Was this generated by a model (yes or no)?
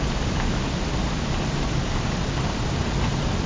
no